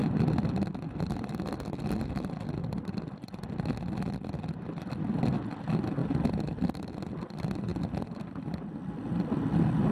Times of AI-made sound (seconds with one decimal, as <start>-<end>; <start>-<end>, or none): none